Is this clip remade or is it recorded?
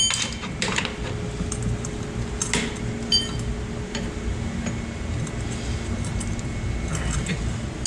recorded